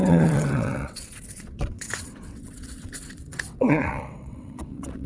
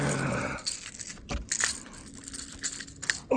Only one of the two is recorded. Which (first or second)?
second